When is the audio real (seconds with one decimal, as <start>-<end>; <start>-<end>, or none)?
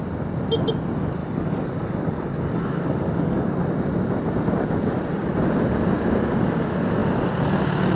0.0-1.2; 3.5-8.0